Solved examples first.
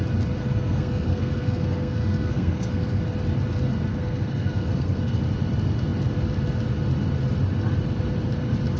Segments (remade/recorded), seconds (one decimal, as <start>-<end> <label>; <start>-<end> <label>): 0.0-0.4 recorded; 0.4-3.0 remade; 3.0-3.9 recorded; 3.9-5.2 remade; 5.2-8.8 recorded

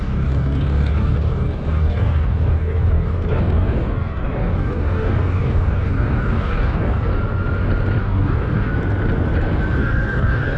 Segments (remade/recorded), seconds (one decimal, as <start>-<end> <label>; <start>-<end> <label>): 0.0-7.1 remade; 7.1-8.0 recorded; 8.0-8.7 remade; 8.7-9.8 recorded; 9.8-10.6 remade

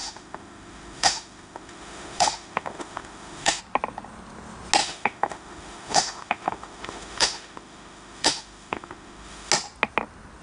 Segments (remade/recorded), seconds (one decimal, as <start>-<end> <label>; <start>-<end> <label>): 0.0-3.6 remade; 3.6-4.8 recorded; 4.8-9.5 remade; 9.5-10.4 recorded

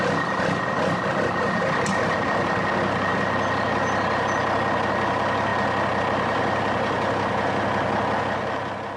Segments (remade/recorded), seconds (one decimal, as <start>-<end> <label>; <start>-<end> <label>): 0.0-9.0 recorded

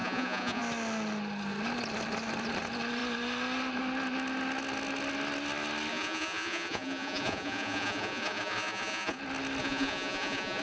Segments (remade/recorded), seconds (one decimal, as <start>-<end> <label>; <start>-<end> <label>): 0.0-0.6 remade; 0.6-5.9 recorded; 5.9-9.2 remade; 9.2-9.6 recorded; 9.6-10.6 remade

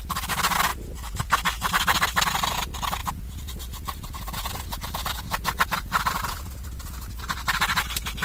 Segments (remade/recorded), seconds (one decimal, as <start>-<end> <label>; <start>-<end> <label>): 0.0-3.0 recorded; 3.0-7.2 remade; 7.2-8.2 recorded

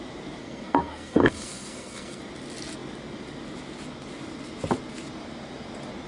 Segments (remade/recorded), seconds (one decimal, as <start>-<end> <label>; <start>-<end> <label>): 0.0-0.4 recorded; 0.4-2.2 remade; 2.2-6.1 recorded

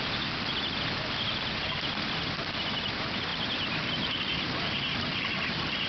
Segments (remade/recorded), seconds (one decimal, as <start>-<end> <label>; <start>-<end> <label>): 0.0-3.3 recorded; 3.3-3.9 remade; 3.9-5.1 recorded; 5.1-5.9 remade